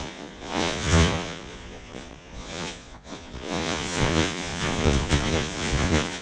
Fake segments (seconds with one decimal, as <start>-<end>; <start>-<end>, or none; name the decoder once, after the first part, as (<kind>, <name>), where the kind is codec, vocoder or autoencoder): 0.0-6.2 (vocoder, Vocos)